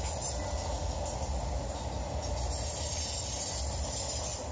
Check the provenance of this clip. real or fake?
real